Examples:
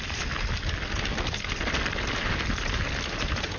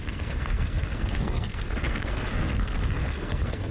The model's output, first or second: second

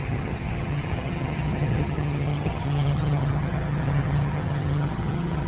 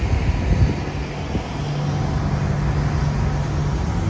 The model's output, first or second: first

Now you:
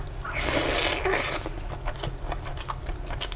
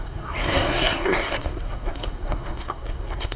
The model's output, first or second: second